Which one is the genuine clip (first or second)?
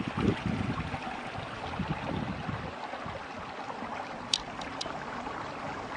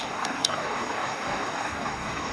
first